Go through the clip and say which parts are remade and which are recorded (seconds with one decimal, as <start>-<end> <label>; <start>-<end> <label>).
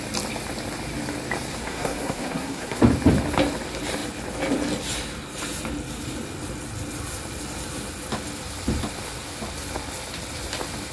0.0-1.5 recorded; 1.5-2.8 remade; 2.8-10.9 recorded